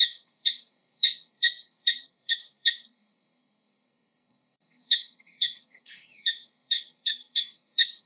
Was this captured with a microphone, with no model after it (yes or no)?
no